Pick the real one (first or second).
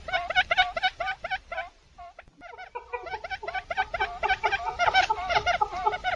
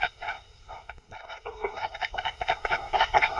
first